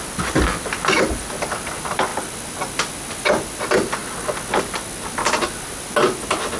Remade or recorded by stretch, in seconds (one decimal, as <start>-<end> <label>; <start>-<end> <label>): 0.0-6.6 recorded